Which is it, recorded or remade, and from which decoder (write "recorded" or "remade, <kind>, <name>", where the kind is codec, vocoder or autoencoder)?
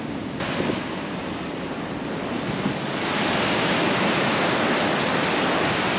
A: recorded